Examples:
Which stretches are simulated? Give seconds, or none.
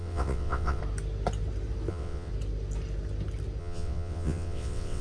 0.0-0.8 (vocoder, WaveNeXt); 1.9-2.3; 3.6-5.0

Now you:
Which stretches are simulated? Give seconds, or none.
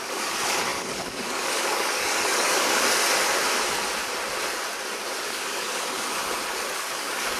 0.0-3.0 (codec, DAC); 5.3-6.2; 6.8-7.4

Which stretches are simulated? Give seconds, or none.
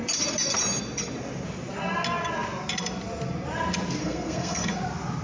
4.0-4.7 (codec, SNAC)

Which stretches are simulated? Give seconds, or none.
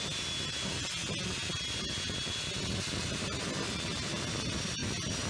none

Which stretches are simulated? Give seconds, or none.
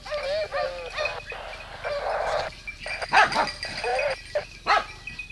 none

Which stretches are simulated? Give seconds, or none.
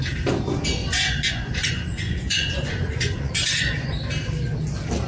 0.8-3.9 (vocoder, Vocos)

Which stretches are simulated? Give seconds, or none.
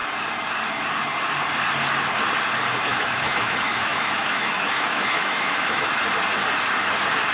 2.9-5.9 (autoencoder, DAC-VAE)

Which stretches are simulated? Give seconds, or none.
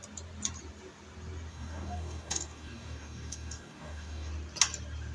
1.5-4.3 (codec, DAC)